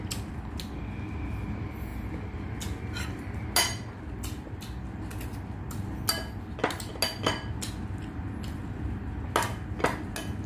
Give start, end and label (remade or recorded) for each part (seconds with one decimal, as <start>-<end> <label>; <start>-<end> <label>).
0.0-10.5 recorded